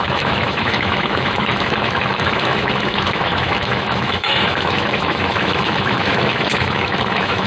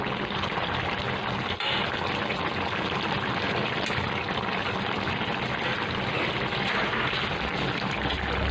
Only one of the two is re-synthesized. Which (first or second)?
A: first